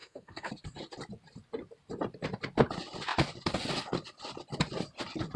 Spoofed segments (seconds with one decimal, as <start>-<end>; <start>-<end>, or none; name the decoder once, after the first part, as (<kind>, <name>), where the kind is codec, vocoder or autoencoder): 0.0-0.5 (codec, SNAC)